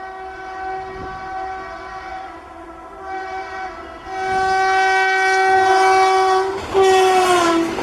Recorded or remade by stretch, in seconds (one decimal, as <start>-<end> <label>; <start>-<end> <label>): 0.0-2.1 recorded; 2.1-3.7 remade; 3.7-7.8 recorded